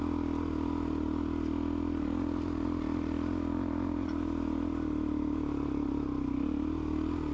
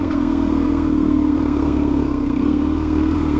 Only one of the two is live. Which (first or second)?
first